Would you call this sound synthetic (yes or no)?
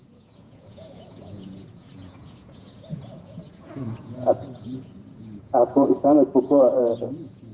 yes